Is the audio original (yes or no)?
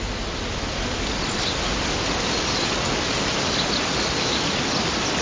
yes